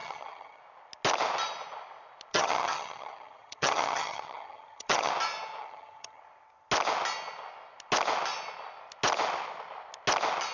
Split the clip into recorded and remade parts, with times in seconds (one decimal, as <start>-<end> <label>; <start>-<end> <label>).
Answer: 0.0-0.6 remade; 0.6-2.3 recorded; 2.3-5.1 remade; 5.1-5.6 recorded; 5.6-6.2 remade; 6.2-10.5 recorded